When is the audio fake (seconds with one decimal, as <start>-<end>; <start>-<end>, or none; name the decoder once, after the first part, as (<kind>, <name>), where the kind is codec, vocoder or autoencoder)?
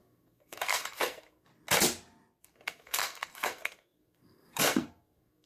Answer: 0.0-1.5 (codec, SNAC); 2.4-5.5